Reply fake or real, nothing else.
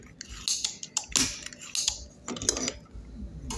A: real